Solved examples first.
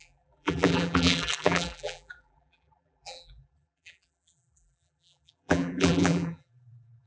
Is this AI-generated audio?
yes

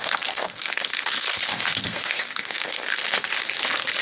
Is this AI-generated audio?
yes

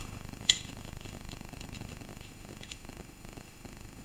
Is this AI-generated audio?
yes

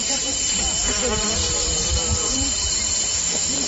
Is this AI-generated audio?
yes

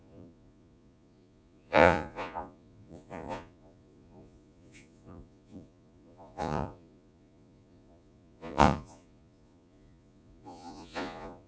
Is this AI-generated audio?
yes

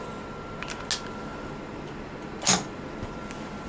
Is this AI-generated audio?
no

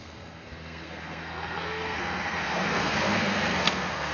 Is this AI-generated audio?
yes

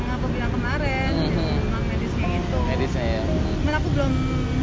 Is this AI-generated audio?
no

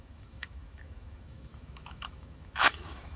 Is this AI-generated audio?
yes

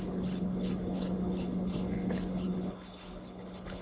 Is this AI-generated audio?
yes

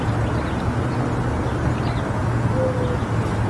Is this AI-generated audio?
no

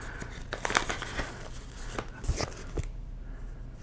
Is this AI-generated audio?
no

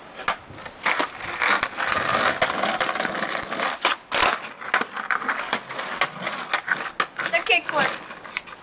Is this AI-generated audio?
no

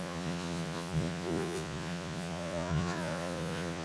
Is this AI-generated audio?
yes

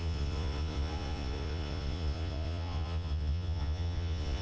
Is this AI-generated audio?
yes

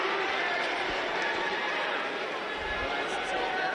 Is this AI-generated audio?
no